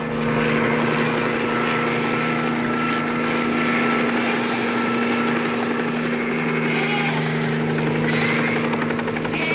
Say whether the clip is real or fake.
real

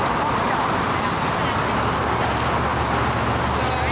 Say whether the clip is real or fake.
real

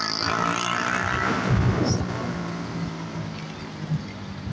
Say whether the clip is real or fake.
real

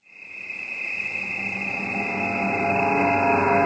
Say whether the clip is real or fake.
real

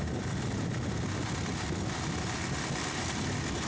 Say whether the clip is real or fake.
real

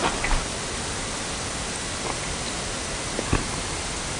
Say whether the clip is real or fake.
real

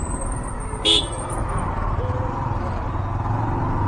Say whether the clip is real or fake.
real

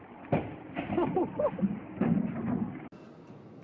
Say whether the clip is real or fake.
real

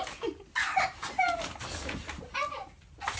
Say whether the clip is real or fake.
real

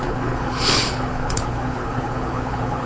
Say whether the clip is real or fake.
fake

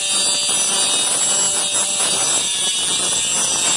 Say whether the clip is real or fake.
real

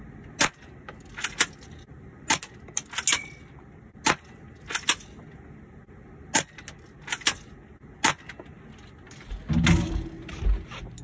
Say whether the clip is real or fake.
real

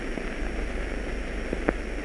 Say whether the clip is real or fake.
real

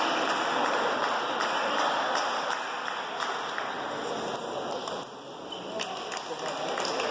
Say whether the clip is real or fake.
real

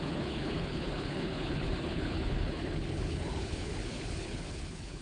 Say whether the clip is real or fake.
fake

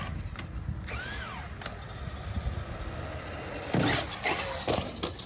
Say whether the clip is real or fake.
real